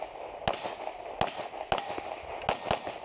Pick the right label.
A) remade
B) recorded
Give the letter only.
B